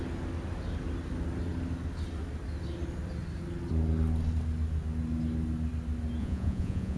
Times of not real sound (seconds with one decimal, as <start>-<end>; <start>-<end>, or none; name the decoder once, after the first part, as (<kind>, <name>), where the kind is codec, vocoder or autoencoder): 6.2-7.0 (vocoder, Vocos)